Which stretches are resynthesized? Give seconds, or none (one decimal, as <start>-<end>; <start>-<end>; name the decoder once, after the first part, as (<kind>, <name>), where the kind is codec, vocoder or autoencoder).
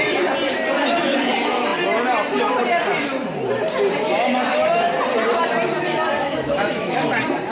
6.2-7.1 (autoencoder, DAC-VAE)